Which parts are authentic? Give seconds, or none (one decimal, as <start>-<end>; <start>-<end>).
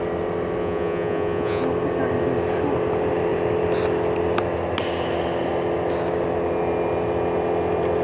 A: 0.0-0.6; 1.6-8.0